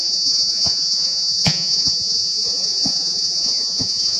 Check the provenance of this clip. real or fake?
fake